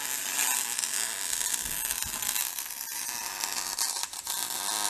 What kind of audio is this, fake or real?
real